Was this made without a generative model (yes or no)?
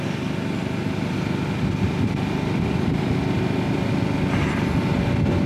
yes